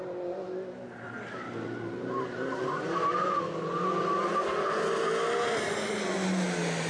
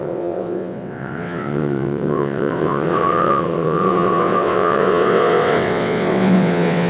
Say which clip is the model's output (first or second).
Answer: second